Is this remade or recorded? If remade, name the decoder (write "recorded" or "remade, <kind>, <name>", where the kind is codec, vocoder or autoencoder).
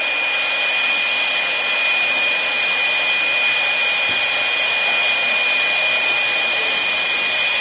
recorded